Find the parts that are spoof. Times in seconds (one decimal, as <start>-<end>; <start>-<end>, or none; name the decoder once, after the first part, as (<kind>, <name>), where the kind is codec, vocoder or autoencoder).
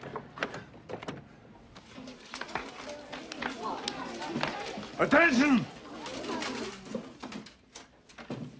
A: none